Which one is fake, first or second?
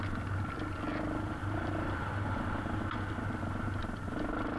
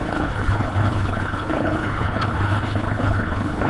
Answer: second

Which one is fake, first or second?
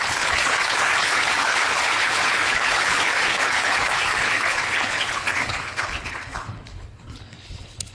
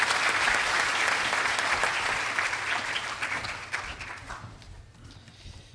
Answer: first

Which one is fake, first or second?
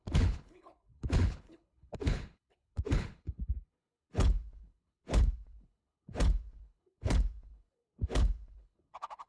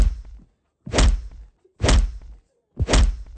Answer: first